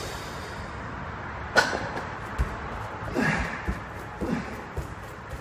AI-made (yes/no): no